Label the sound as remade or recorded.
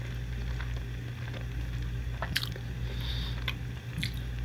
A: recorded